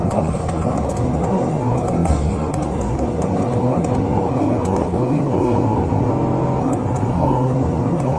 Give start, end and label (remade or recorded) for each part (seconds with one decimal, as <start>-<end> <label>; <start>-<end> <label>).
0.0-6.1 remade; 6.1-6.6 recorded; 6.6-8.2 remade